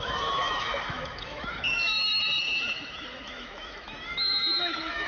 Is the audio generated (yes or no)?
yes